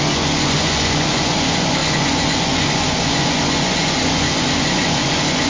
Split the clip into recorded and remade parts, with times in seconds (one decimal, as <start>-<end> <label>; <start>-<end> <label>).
0.0-5.5 remade